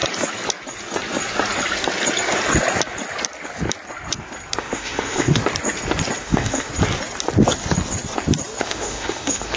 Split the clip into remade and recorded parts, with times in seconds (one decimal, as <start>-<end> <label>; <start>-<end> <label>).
0.0-4.6 recorded; 4.6-5.4 remade; 5.4-6.2 recorded; 6.2-6.7 remade; 6.7-8.6 recorded; 8.6-9.6 remade